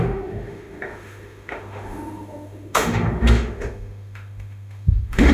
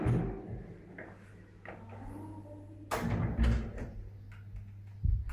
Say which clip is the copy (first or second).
first